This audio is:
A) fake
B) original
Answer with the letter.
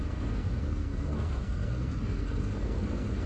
A